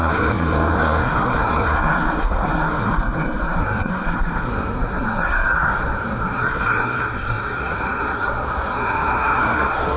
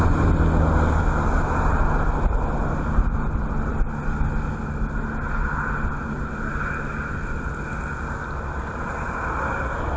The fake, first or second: first